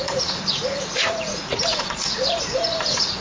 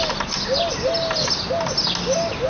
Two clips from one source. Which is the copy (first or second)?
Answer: first